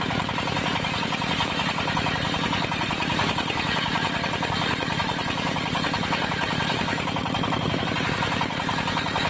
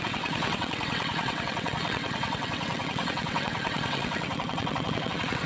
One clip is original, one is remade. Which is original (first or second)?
first